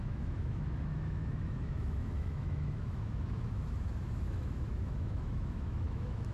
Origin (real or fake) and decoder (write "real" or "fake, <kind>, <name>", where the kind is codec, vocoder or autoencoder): fake, autoencoder, DAC-VAE